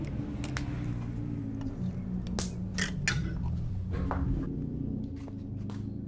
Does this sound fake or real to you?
real